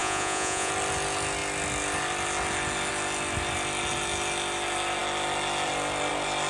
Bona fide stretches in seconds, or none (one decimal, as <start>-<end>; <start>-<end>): 0.7-6.5